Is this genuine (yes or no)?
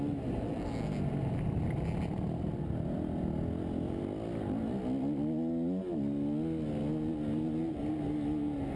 yes